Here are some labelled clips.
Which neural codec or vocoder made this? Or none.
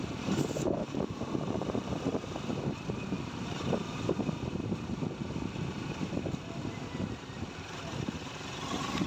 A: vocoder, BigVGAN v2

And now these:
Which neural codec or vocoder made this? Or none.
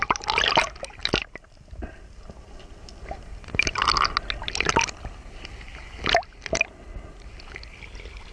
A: none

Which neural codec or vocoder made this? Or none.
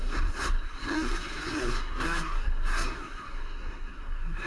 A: codec, SNAC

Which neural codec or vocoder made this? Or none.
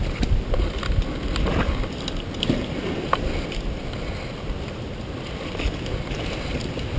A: none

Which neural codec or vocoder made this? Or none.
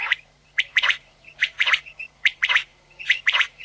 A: vocoder, Vocos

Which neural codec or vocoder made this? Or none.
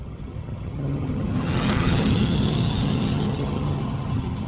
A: vocoder, HiFi-GAN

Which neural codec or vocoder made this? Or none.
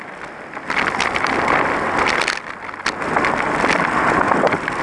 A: none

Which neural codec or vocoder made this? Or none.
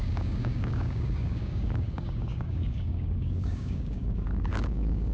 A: codec, DAC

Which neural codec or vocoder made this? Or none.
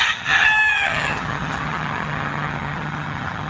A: vocoder, HiFi-GAN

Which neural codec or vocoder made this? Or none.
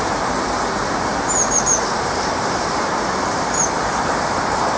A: vocoder, BigVGAN v2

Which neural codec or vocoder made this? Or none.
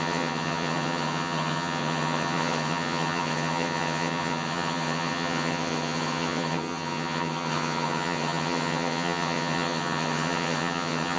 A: vocoder, HiFi-GAN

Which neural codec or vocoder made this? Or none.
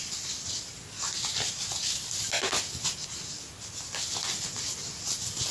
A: none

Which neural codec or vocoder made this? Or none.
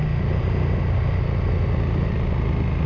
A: none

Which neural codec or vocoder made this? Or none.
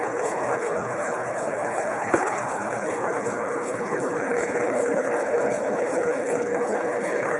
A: codec, HILCodec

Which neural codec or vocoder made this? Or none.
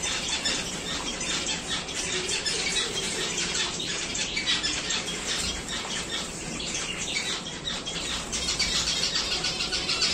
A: vocoder, BigVGAN v2